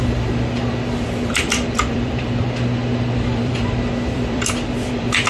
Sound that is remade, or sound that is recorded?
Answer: remade